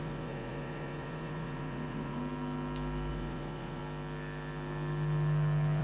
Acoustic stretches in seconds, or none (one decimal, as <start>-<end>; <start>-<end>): 2.2-3.1; 3.8-5.8